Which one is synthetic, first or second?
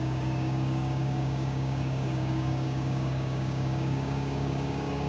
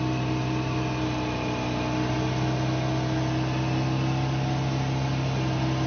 first